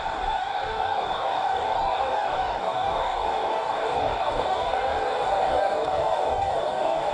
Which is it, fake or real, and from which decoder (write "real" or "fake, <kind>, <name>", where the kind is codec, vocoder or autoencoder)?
fake, codec, DAC